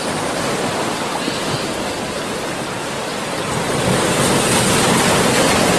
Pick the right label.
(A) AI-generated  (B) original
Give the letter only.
B